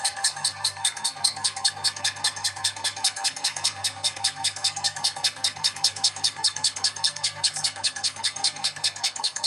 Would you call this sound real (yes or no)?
no